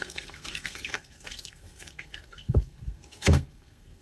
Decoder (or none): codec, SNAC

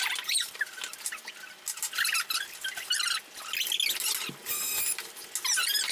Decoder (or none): none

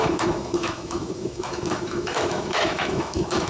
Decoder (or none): autoencoder, DAC-VAE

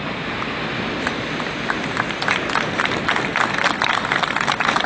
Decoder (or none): none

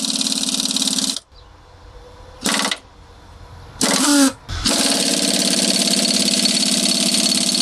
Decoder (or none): none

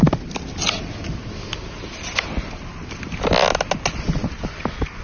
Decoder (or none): none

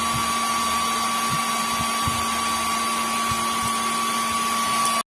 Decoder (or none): none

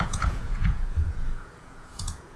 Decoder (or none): vocoder, Vocos